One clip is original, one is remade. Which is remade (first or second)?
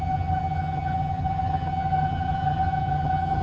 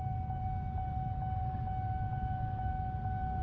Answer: first